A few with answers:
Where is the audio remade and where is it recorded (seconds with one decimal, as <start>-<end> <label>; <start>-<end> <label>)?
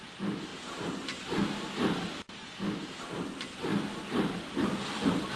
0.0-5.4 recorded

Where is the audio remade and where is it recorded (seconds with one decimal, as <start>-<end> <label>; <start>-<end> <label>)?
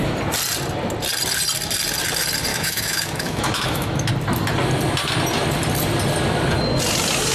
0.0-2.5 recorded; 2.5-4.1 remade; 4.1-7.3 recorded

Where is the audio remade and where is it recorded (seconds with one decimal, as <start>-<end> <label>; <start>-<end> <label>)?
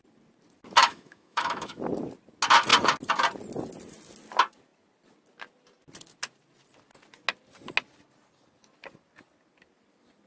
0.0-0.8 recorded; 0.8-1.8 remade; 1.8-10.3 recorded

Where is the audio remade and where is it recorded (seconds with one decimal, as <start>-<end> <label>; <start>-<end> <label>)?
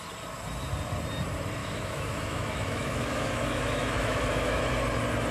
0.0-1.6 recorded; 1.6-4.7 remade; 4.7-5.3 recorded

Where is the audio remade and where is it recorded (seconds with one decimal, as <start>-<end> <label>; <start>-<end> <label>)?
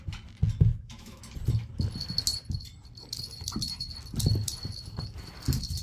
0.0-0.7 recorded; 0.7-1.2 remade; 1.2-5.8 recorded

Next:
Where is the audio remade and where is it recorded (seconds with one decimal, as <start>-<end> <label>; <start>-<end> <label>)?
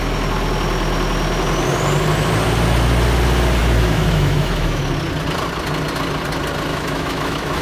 0.0-3.6 recorded; 3.6-4.8 remade; 4.8-6.7 recorded; 6.7-7.6 remade